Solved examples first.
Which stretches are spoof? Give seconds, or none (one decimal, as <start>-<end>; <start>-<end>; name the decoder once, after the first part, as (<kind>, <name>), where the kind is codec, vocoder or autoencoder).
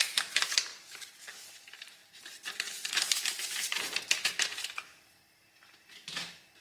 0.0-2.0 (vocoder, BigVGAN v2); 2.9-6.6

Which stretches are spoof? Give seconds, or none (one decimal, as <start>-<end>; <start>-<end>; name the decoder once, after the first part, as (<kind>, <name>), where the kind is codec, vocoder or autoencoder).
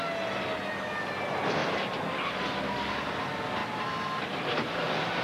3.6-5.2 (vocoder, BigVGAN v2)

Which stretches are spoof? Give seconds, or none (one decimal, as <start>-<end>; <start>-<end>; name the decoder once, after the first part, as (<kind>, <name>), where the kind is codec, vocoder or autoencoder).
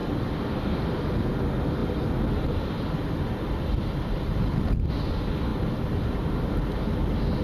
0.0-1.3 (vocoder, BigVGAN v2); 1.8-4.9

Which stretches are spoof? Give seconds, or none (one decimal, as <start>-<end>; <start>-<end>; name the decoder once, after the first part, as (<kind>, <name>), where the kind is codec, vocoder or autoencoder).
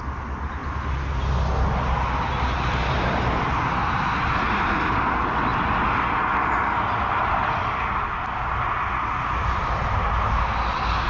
none